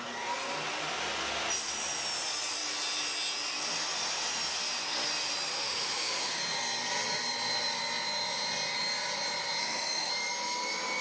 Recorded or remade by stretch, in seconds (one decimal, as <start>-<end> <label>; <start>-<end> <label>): 0.0-5.5 recorded; 5.5-6.4 remade; 6.4-9.6 recorded; 9.6-10.1 remade; 10.1-11.0 recorded